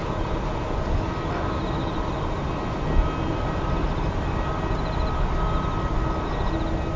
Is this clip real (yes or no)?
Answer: yes